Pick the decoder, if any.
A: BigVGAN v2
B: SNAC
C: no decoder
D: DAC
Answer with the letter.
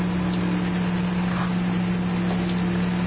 C